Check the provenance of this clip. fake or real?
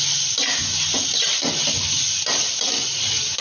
real